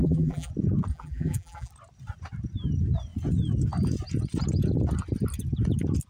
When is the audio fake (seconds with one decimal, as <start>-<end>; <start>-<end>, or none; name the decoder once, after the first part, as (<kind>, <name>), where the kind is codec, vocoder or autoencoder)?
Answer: 0.0-0.5 (vocoder, BigVGAN v2); 0.9-1.7